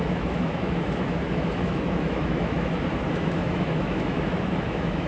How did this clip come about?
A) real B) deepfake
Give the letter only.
B